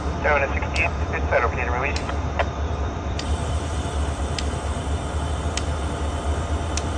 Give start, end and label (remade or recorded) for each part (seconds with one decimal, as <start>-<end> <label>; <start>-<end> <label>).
0.0-1.9 recorded; 1.9-4.2 remade; 4.2-7.0 recorded

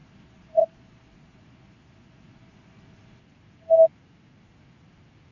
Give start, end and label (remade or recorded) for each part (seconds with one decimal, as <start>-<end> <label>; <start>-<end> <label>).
0.0-3.2 remade; 3.2-5.3 recorded

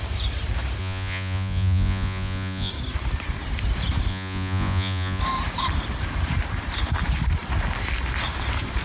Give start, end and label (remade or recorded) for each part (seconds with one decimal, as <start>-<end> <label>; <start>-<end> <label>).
0.0-0.8 recorded; 0.8-2.7 remade; 2.7-4.1 recorded; 4.1-5.2 remade; 5.2-8.8 recorded

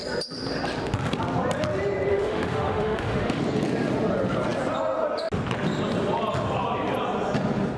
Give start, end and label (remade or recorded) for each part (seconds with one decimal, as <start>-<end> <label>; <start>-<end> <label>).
0.0-2.1 recorded; 2.1-3.4 remade; 3.4-7.8 recorded

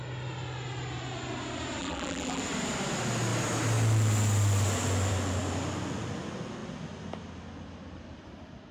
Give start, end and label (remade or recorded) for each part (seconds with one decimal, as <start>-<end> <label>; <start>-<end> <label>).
0.0-1.8 recorded; 1.8-2.4 remade; 2.4-8.7 recorded

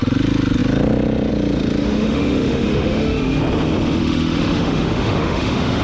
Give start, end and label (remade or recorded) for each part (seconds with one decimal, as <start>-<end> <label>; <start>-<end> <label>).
0.0-1.8 recorded; 1.8-3.4 remade; 3.4-4.0 recorded; 4.0-5.8 remade